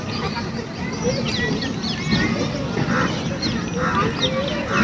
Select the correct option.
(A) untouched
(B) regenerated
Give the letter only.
A